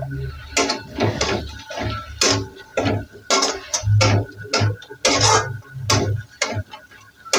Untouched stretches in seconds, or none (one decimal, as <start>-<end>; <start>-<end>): 0.0-0.9; 1.4-7.4